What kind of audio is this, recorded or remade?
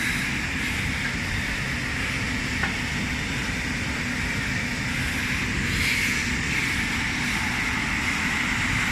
recorded